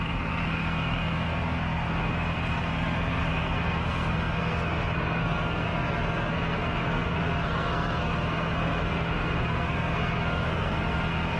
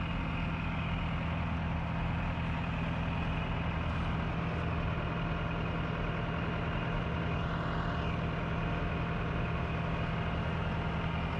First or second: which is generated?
first